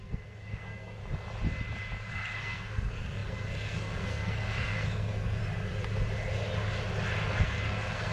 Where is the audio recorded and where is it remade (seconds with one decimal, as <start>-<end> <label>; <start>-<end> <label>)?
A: 0.0-1.0 remade; 1.0-2.1 recorded; 2.1-5.4 remade; 5.4-7.3 recorded; 7.3-8.1 remade